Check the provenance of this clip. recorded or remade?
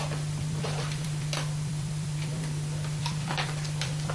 remade